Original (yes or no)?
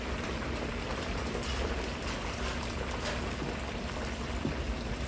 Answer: no